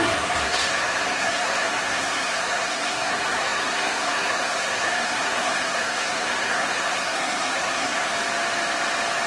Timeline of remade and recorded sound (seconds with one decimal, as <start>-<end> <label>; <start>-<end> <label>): 0.0-8.1 remade; 8.1-9.3 recorded